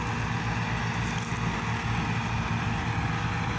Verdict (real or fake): real